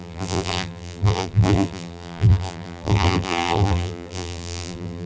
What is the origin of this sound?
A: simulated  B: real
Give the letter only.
A